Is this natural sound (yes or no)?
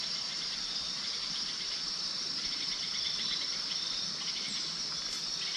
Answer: yes